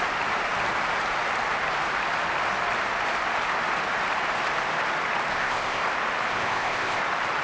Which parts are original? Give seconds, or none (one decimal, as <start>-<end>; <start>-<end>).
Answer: 0.0-5.3; 5.8-6.3; 7.0-7.4